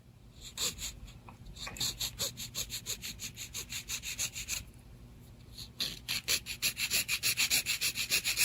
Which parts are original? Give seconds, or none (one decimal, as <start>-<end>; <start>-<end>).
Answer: 0.0-8.4